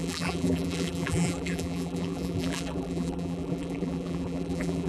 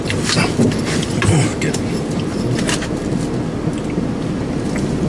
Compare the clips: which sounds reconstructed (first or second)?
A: first